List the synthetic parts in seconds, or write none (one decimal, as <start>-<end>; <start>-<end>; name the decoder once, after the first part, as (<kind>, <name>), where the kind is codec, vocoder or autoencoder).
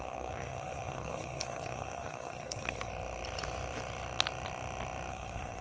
0.0-2.9 (codec, SNAC); 5.1-5.6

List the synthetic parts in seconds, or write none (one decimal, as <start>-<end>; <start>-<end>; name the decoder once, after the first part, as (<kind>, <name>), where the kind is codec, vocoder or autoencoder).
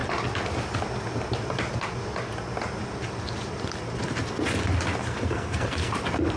5.0-5.9 (codec, SNAC)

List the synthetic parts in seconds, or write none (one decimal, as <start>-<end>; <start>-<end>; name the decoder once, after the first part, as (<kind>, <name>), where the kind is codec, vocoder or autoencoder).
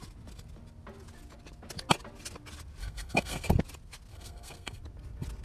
2.8-3.5 (codec, SNAC); 4.1-4.8